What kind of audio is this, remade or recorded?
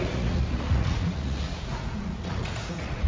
remade